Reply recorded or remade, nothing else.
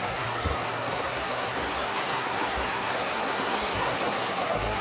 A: remade